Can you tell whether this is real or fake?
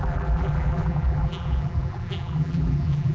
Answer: fake